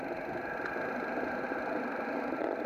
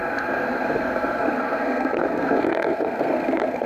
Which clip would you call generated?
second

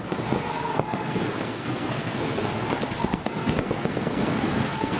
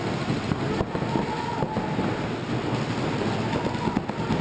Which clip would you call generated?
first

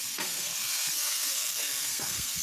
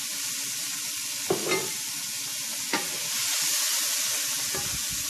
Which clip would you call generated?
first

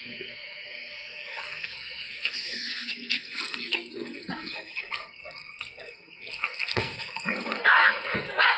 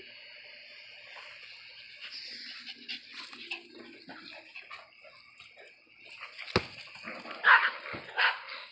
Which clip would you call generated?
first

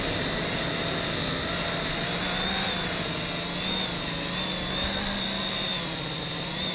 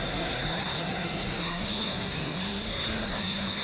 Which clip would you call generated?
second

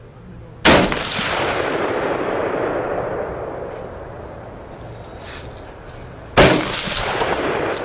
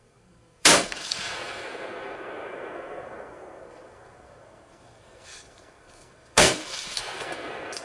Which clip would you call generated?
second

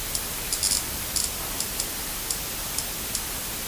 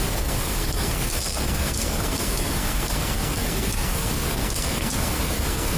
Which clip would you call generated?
second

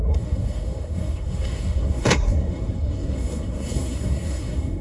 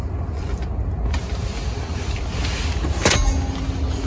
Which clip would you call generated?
first